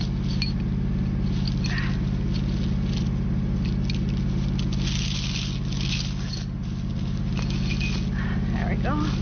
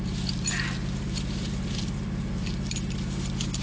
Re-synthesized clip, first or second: second